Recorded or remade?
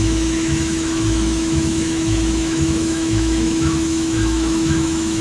remade